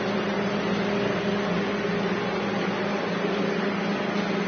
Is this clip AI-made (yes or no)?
no